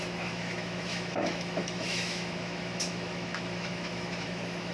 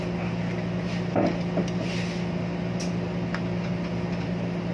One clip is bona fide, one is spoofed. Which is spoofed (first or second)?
first